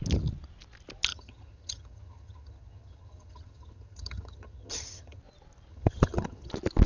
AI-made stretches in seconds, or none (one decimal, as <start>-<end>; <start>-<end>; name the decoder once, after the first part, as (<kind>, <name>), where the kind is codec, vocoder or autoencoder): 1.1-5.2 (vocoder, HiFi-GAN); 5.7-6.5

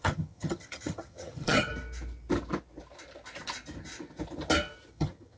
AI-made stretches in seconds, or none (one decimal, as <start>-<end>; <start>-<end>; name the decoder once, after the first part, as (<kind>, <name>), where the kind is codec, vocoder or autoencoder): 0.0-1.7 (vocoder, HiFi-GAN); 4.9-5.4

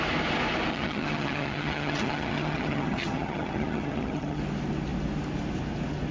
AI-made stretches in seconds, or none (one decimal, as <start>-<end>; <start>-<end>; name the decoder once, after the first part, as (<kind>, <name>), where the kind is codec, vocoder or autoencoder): 0.7-4.4 (vocoder, HiFi-GAN)